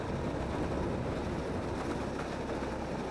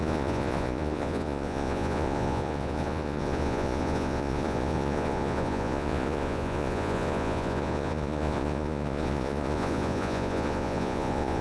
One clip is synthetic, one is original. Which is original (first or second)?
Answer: first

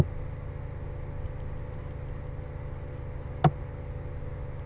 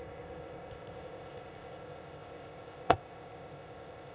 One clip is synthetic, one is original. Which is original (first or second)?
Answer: first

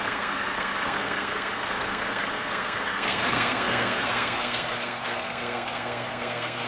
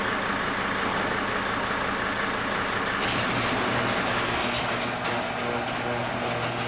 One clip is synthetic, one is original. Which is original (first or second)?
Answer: second